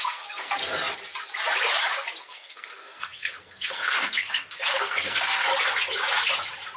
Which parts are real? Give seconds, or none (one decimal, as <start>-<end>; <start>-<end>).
0.6-2.2; 5.5-6.8